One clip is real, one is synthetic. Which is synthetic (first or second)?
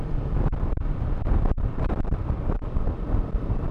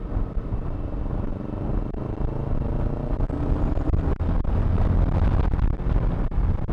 first